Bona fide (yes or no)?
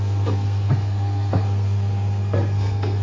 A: no